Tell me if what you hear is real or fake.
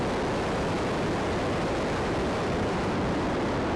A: real